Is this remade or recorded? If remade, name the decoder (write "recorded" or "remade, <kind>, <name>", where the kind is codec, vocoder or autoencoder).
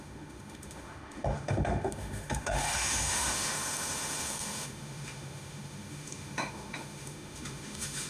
remade, autoencoder, DAC-VAE